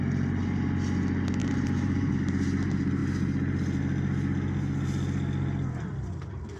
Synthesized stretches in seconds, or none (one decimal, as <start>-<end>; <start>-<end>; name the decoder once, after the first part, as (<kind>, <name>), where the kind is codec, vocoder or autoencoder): 1.4-2.1 (vocoder, BigVGAN v2)